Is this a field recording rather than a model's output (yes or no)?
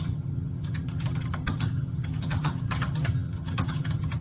no